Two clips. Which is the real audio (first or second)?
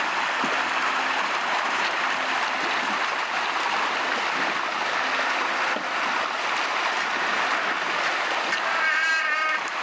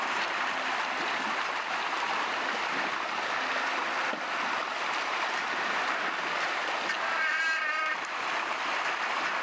first